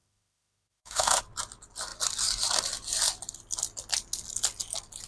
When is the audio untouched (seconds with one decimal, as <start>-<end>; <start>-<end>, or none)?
1.2-5.1